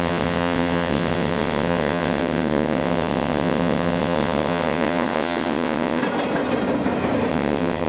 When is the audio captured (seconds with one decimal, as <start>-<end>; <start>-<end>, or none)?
6.0-7.3